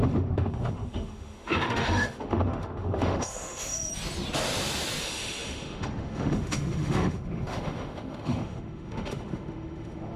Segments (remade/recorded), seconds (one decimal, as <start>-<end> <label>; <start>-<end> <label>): 0.0-3.9 remade; 3.9-5.0 recorded; 5.0-10.2 remade